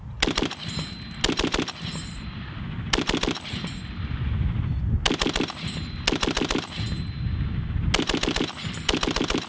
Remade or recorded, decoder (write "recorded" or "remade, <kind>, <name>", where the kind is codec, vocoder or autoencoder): recorded